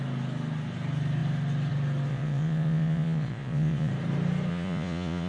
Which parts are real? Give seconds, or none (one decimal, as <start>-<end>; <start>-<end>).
0.0-2.1; 3.9-4.5